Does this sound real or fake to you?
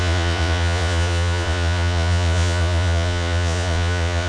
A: fake